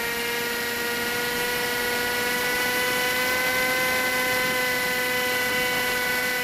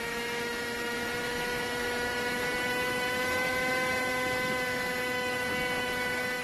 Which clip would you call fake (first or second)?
second